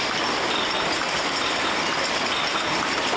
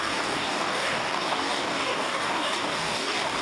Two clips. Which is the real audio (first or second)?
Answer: first